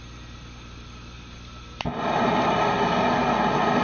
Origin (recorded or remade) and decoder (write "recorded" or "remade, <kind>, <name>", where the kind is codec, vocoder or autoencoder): remade, vocoder, BigVGAN v2